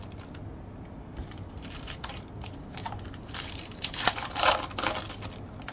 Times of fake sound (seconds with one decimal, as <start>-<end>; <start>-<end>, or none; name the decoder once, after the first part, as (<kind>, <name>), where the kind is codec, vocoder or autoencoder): 1.1-4.5 (vocoder, BigVGAN v2)

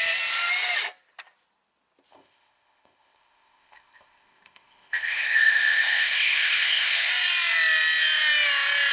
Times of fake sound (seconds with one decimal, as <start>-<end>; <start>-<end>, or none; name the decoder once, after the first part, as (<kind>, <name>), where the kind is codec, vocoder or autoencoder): 2.1-7.1 (codec, ZipCodec)

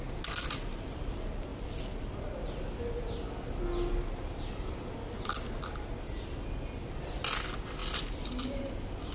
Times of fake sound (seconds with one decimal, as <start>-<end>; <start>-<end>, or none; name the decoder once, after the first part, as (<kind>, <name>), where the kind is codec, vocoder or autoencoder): 7.8-8.6 (vocoder, BigVGAN v2)

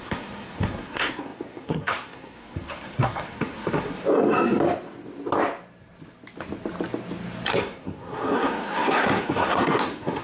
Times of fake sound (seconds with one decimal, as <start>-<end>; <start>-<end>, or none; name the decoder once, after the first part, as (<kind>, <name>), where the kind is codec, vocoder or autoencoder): 0.0-4.0 (codec, SNAC); 7.5-10.2

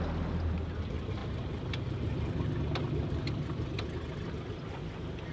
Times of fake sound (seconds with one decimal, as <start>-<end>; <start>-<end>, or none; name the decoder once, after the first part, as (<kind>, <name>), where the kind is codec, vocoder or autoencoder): none